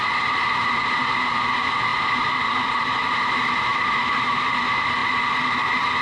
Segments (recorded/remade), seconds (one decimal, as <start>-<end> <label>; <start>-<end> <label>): 0.0-6.0 recorded